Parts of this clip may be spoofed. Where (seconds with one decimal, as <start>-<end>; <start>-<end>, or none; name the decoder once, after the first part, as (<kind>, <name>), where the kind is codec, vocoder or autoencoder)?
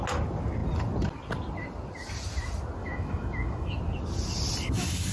2.8-3.8 (autoencoder, DAC-VAE)